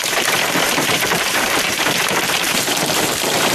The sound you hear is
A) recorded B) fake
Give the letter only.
B